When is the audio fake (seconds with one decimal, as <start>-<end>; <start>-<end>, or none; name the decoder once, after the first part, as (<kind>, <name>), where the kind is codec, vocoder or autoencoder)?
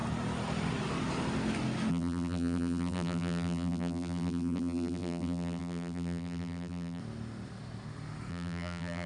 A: 1.9-7.0 (vocoder, BigVGAN v2); 8.3-9.1